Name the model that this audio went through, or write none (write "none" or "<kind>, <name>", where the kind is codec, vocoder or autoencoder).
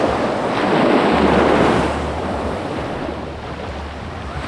none